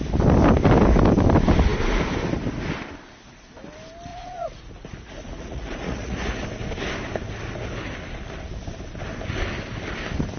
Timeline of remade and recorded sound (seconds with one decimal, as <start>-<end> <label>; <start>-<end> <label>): 0.0-4.1 recorded; 4.1-6.4 remade; 6.4-10.4 recorded